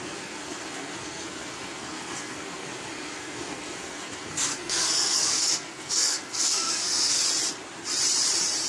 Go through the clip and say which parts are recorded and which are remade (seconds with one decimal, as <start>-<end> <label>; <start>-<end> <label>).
0.0-7.2 remade; 7.2-8.7 recorded

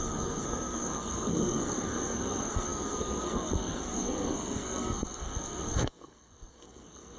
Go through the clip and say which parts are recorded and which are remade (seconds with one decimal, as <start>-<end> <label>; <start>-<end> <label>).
0.0-7.2 remade

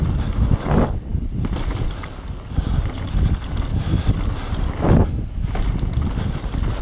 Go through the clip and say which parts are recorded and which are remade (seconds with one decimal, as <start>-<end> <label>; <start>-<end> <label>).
0.0-6.8 recorded

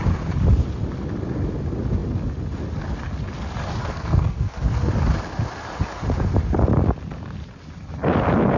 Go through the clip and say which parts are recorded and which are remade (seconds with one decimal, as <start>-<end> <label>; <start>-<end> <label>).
0.0-3.8 recorded; 3.8-4.9 remade; 4.9-8.6 recorded

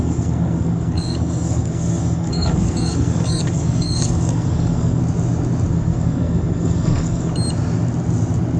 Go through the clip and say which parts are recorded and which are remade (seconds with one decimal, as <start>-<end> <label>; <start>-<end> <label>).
0.0-5.0 remade; 5.0-5.7 recorded; 5.7-7.3 remade; 7.3-8.6 recorded